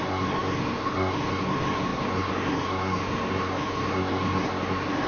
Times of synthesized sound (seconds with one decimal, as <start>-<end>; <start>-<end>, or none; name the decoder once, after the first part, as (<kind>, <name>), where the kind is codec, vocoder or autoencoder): 0.0-5.1 (codec, SNAC)